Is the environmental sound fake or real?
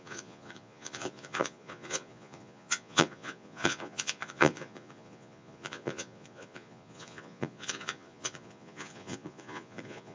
fake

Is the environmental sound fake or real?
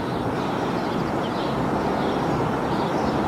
real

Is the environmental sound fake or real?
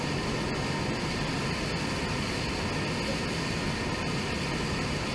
real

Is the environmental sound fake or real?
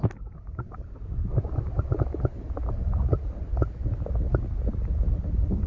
real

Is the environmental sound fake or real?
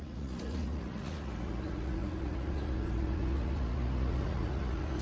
fake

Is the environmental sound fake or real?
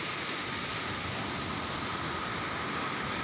real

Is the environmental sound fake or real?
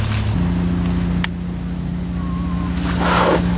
real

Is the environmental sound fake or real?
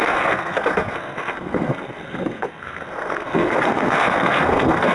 fake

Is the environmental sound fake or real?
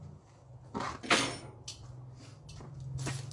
real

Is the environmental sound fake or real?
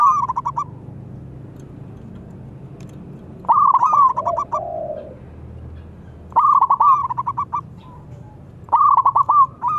real